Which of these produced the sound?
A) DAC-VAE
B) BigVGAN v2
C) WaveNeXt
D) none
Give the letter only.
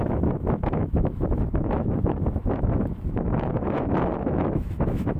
A